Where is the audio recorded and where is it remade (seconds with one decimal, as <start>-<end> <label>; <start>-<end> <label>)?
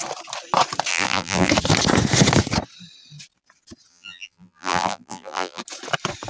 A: 0.0-0.9 recorded; 0.9-1.5 remade; 1.5-3.9 recorded; 3.9-5.6 remade; 5.6-6.3 recorded